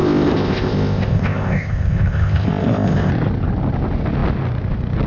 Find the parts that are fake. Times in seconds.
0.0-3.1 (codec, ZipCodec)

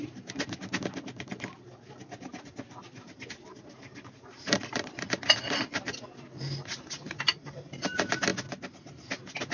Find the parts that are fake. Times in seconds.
none